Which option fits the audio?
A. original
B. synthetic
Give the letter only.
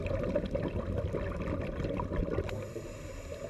A